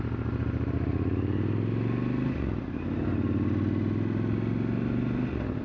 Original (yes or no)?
yes